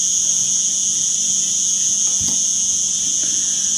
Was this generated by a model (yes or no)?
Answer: yes